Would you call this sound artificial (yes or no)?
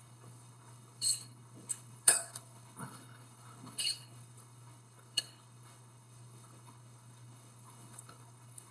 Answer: yes